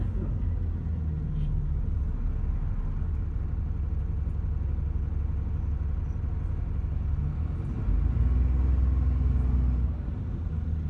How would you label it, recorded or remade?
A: recorded